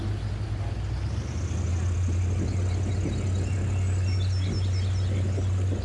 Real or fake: real